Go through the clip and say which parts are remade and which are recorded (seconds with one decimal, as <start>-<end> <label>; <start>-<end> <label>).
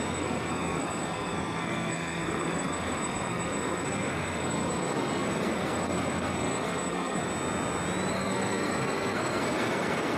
0.0-7.3 remade; 7.3-8.1 recorded; 8.1-10.2 remade